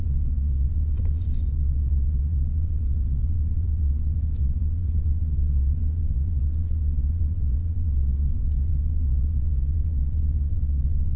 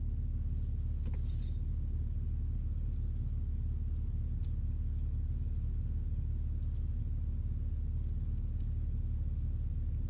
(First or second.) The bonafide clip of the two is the second